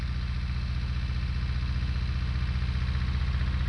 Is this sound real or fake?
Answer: real